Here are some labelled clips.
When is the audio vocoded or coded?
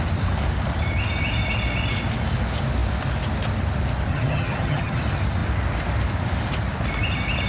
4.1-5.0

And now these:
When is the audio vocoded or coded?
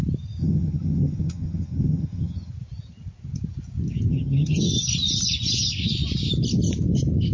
0.4-2.5; 4.1-4.7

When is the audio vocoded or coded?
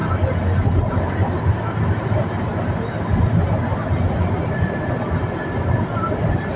none